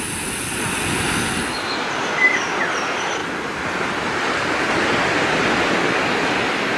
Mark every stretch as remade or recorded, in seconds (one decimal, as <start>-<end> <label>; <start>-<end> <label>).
0.0-6.8 recorded